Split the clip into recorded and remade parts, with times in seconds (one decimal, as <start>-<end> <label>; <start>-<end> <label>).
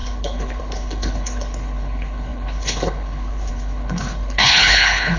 0.0-5.2 remade